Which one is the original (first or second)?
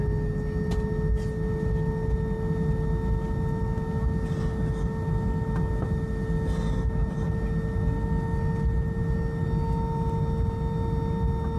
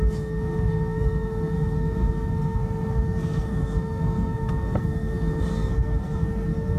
first